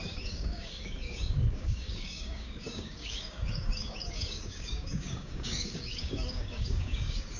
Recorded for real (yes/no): no